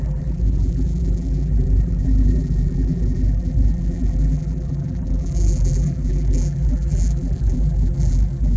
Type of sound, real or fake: fake